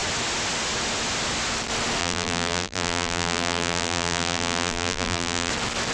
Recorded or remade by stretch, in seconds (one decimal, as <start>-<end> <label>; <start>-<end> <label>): 0.0-2.0 recorded; 2.0-5.5 remade; 5.5-5.9 recorded